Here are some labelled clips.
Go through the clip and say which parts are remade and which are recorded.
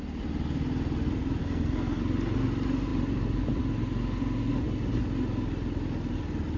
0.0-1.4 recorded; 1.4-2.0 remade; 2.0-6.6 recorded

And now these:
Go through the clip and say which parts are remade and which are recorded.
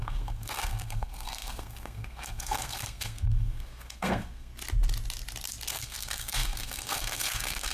0.0-4.5 remade; 4.5-5.7 recorded; 5.7-7.7 remade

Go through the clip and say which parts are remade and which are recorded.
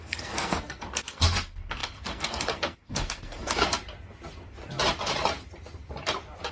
0.0-3.7 remade; 3.7-6.5 recorded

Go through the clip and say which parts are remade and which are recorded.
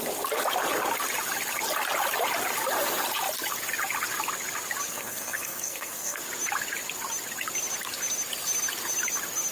0.0-4.9 recorded; 4.9-6.2 remade; 6.2-9.5 recorded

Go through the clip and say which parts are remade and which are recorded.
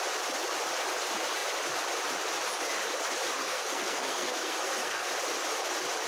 0.0-3.4 recorded; 3.4-5.1 remade; 5.1-6.1 recorded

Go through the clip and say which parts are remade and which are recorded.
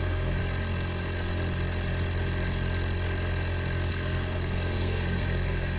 0.0-0.4 remade; 0.4-3.9 recorded; 3.9-5.8 remade